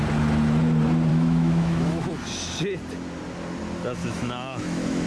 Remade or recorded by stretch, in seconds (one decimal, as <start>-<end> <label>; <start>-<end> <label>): 0.0-1.1 recorded; 1.1-2.1 remade; 2.1-4.0 recorded; 4.0-5.1 remade

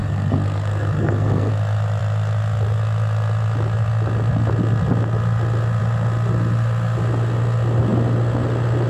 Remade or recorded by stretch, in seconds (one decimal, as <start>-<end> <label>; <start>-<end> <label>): 0.0-1.5 remade; 1.5-8.9 recorded